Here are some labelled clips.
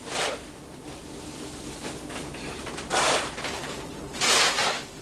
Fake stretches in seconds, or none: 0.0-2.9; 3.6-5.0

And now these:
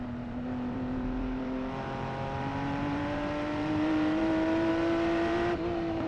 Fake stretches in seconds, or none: 0.0-6.1